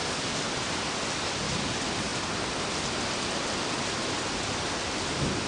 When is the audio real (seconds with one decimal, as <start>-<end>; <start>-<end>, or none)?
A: 0.0-5.5